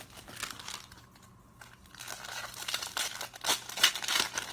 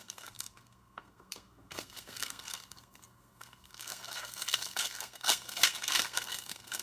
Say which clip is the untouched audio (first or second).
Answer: first